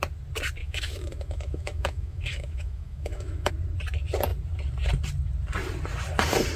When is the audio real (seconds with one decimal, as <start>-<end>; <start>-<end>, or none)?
0.0-0.6; 3.5-6.6